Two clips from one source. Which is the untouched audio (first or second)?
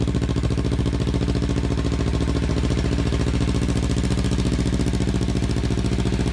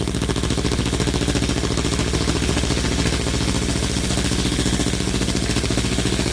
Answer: first